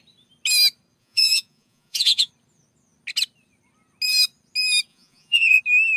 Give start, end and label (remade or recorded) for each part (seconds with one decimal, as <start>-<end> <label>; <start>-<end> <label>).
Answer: 0.0-1.0 recorded; 1.0-2.3 remade; 2.3-4.9 recorded; 4.9-5.6 remade; 5.6-6.0 recorded

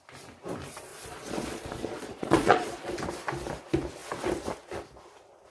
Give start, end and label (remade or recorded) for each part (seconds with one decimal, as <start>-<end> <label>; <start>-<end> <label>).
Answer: 0.0-0.9 recorded; 0.9-2.9 remade; 2.9-5.5 recorded

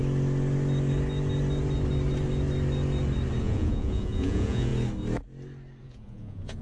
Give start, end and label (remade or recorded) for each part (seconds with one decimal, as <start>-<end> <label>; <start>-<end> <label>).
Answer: 0.0-3.4 recorded; 3.4-4.7 remade; 4.7-5.8 recorded; 5.8-6.6 remade

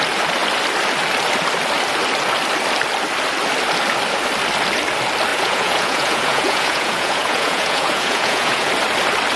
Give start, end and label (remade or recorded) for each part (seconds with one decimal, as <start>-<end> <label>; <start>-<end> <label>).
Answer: 0.0-5.3 recorded; 5.3-8.7 remade; 8.7-9.4 recorded

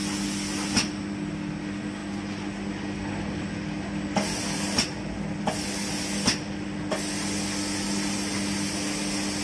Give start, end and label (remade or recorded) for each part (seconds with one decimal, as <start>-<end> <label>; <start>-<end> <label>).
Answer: 0.0-9.4 recorded

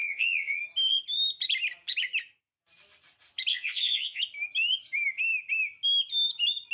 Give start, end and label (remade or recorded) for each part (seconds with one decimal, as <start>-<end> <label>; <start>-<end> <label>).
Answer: 0.0-0.6 remade; 0.6-3.5 recorded; 3.5-4.2 remade; 4.2-6.7 recorded